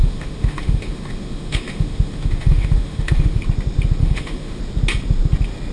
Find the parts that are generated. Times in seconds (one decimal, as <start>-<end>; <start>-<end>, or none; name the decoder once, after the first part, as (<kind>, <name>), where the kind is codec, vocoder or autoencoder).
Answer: 0.0-3.4 (autoencoder, DAC-VAE); 4.0-4.6